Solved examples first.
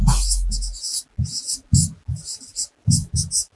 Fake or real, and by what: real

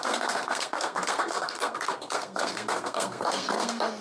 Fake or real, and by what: fake, codec, SNAC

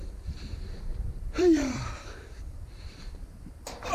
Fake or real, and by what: fake, vocoder, BigVGAN v2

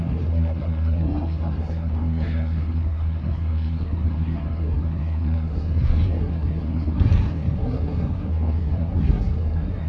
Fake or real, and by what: fake, codec, SNAC